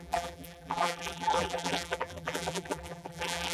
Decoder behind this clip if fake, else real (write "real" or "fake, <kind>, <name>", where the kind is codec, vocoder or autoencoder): fake, vocoder, BigVGAN v2